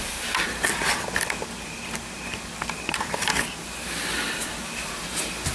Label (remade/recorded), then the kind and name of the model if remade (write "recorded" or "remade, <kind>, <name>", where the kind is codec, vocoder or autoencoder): recorded